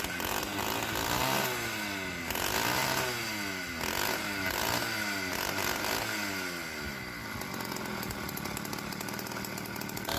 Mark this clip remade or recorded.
recorded